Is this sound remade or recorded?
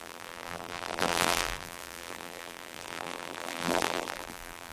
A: remade